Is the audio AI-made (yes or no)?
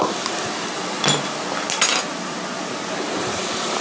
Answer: no